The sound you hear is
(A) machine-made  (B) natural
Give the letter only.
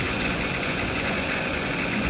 A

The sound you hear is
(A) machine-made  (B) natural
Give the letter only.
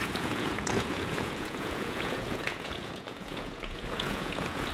A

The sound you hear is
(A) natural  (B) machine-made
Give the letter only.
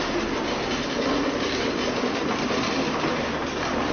A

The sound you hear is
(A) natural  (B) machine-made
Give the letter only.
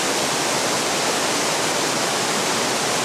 A